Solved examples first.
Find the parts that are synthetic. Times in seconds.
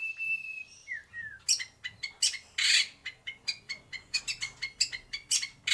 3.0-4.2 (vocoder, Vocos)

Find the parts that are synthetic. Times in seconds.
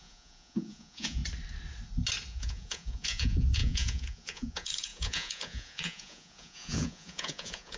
0.0-1.2 (vocoder, Vocos); 2.3-7.8